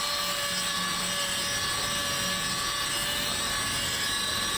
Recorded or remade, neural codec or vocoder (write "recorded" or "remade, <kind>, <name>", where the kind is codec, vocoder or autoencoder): recorded